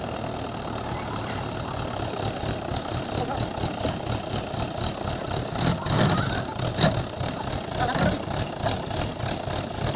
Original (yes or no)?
yes